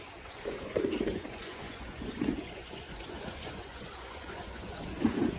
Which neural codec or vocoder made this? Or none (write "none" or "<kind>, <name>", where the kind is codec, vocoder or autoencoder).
vocoder, Vocos